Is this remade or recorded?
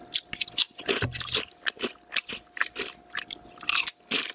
recorded